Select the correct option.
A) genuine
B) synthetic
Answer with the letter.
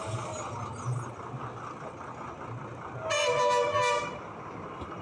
A